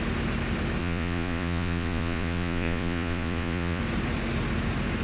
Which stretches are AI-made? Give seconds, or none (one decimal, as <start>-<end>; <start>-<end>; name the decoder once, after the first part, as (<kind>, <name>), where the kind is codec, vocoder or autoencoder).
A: 0.8-3.8 (vocoder, Vocos)